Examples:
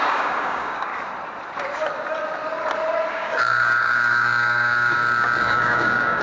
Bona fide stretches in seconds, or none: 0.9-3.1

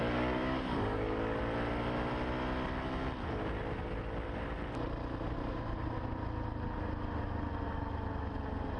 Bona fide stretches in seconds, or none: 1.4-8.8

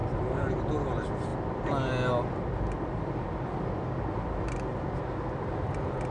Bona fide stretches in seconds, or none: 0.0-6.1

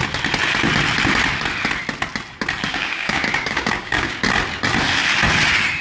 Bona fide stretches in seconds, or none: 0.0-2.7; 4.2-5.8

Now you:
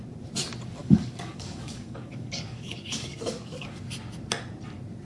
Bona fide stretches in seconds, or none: 0.0-0.8; 3.9-5.1

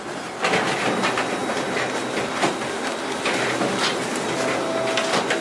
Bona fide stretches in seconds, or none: 0.0-5.4

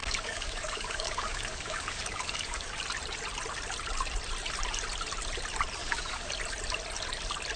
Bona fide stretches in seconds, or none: 2.8-5.8; 6.3-7.6

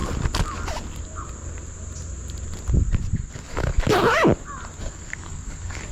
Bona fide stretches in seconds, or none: 0.0-3.3; 3.7-4.8